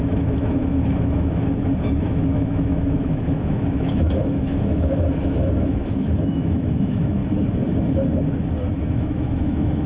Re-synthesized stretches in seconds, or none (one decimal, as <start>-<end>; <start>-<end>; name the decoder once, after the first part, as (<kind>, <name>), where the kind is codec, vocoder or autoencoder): 0.0-7.2 (autoencoder, DAC-VAE); 8.7-9.9